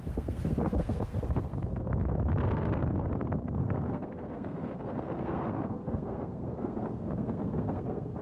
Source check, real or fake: fake